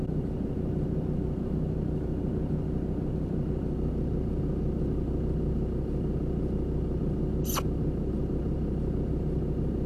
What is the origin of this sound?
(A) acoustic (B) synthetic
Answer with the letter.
A